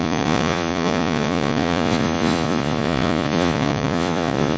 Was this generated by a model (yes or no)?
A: yes